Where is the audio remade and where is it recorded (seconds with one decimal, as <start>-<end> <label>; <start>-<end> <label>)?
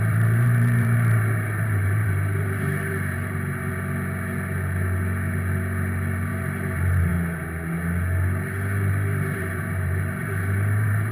0.0-3.7 remade; 3.7-6.3 recorded; 6.3-7.1 remade; 7.1-8.9 recorded; 8.9-11.1 remade